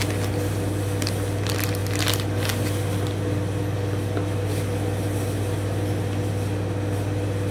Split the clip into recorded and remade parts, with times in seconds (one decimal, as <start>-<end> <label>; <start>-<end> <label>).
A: 0.0-7.5 recorded